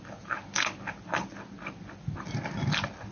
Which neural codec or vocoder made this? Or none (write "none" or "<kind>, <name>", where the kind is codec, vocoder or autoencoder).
none